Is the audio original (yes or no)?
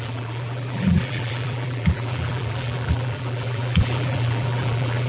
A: no